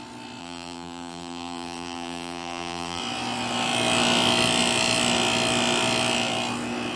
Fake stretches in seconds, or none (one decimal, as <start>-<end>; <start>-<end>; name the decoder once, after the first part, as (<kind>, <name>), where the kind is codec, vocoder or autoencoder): 0.4-3.0 (vocoder, BigVGAN v2)